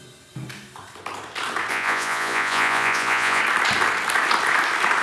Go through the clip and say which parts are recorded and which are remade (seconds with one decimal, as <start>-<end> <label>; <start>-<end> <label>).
0.0-1.7 recorded; 1.7-3.4 remade; 3.4-5.0 recorded